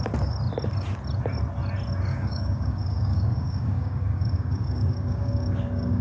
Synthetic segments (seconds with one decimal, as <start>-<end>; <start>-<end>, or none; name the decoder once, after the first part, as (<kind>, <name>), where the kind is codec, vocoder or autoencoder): 2.1-6.0 (codec, DAC)